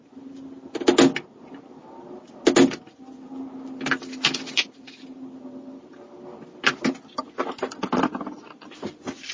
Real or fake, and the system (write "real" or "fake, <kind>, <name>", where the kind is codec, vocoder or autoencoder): real